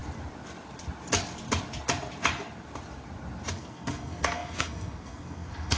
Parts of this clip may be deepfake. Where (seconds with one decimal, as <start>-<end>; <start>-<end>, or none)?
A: 3.5-5.8